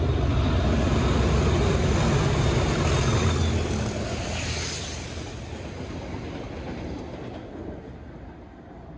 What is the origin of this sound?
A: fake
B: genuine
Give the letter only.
B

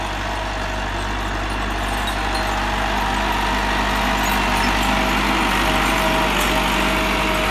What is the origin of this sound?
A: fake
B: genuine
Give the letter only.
B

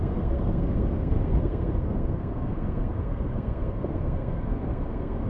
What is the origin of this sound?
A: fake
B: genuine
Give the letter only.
A